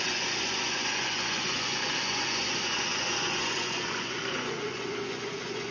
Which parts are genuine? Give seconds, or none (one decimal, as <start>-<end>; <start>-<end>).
none